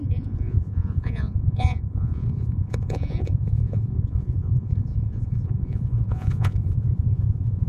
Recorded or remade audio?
remade